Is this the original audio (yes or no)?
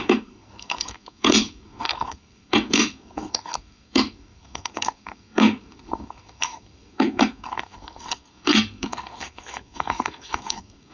no